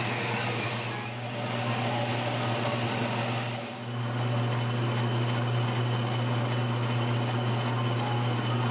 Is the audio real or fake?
real